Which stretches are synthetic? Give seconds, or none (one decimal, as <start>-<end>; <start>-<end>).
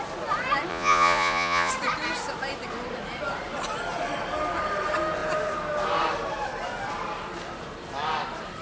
0.7-1.7